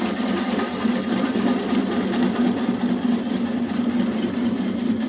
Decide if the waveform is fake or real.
real